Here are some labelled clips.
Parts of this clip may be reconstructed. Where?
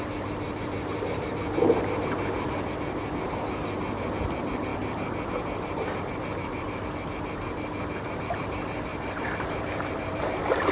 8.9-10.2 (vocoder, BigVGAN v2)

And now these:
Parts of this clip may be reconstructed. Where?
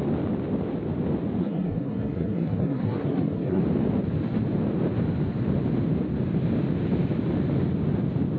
1.4-3.6 (codec, SNAC)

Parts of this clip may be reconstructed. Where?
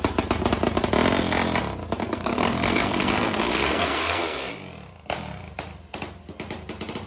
2.0-4.5 (codec, SNAC)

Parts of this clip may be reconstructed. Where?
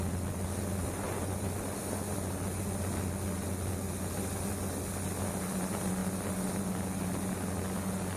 none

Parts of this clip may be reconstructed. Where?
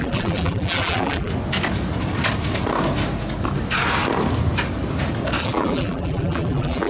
0.0-1.3 (vocoder, BigVGAN v2); 5.4-6.9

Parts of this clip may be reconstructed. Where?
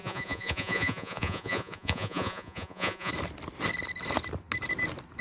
0.0-3.1 (vocoder, Vocos)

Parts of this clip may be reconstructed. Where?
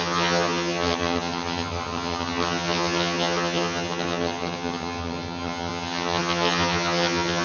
0.0-7.4 (vocoder, HiFi-GAN)